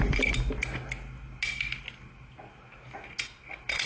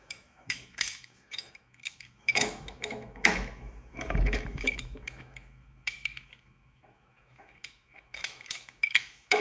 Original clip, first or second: first